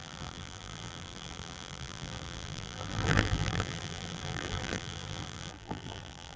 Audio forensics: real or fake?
fake